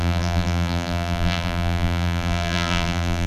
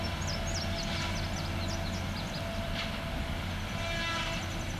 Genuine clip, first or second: second